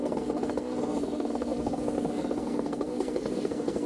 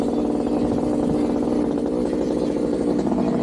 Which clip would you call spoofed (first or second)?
first